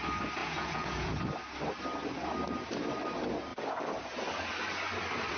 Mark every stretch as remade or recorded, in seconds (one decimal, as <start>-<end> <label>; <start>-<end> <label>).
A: 0.0-0.4 recorded; 0.4-1.1 remade; 1.1-5.4 recorded